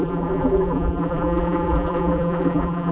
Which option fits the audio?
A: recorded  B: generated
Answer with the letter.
B